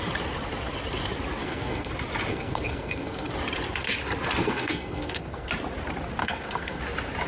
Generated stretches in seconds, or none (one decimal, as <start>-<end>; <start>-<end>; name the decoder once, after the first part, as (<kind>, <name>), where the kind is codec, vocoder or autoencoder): 1.4-1.9 (codec, SNAC); 2.3-3.3; 4.4-5.5; 6.2-6.8